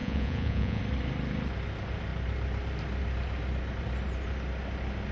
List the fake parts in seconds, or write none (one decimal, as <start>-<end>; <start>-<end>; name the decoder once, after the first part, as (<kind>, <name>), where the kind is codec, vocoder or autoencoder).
0.0-0.8 (vocoder, Vocos)